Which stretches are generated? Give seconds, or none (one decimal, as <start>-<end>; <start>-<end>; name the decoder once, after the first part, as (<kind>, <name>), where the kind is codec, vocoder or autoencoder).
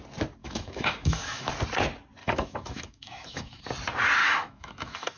0.4-1.5 (autoencoder, DAC-VAE); 2.2-3.6; 4.2-5.2